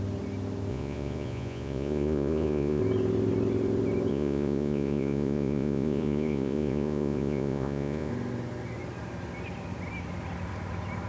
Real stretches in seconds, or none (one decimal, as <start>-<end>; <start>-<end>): 0.0-0.7; 2.8-4.1; 8.1-11.1